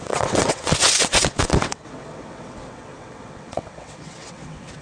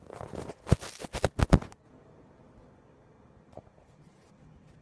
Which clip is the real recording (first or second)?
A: second